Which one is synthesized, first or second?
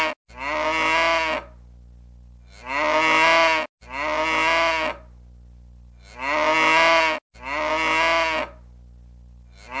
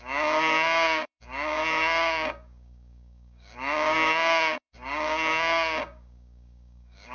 second